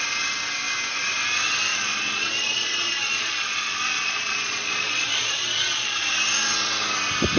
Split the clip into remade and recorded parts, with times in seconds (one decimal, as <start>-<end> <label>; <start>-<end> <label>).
0.0-1.7 recorded; 1.7-6.1 remade; 6.1-7.4 recorded